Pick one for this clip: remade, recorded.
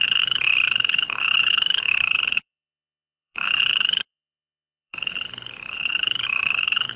remade